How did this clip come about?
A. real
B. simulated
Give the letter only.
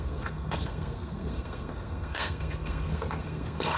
B